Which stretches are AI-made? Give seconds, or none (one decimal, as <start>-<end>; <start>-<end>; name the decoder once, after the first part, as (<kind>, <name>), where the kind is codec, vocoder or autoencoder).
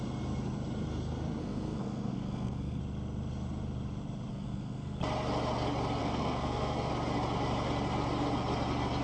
1.4-2.8 (codec, SNAC); 4.3-5.0; 6.0-6.9